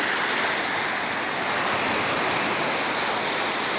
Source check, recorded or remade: recorded